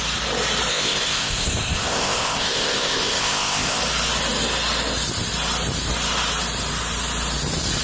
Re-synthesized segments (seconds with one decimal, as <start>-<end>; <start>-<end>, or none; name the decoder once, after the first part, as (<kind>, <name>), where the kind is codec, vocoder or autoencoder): 0.7-3.8 (codec, ZipCodec)